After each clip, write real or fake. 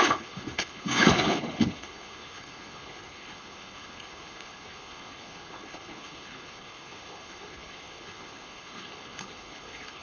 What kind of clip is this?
fake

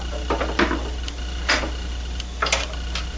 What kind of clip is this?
real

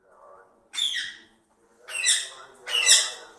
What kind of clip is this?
fake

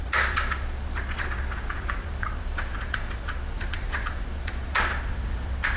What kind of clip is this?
fake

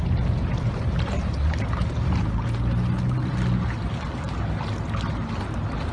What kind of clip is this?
real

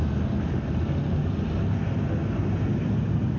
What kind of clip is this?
real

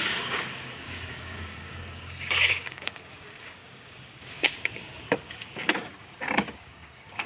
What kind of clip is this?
fake